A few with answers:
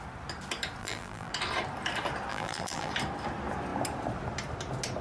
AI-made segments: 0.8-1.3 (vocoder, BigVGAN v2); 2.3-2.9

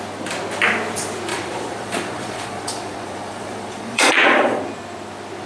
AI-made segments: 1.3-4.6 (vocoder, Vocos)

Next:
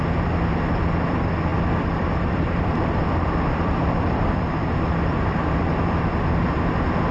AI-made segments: 1.5-5.7 (vocoder, BigVGAN v2)

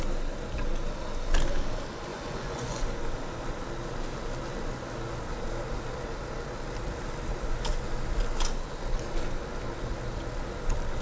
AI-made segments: 2.1-2.8 (vocoder, Vocos)

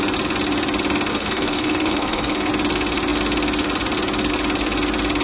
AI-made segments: 1.1-2.5 (codec, SNAC)

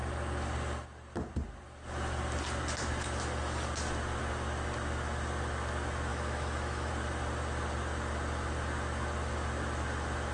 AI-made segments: 6.1-6.9 (autoencoder, DAC-VAE)

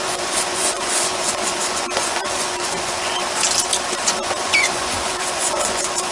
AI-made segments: 0.0-3.2 (vocoder, Vocos); 3.9-6.1